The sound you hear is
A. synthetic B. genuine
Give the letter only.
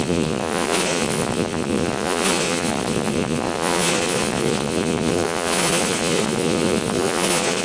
A